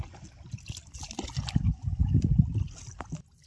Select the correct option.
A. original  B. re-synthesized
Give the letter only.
A